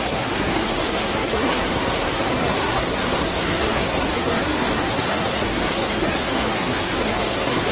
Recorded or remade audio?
remade